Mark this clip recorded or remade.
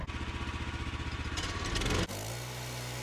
recorded